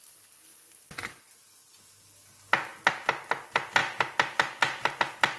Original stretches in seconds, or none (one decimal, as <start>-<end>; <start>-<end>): 0.0-5.4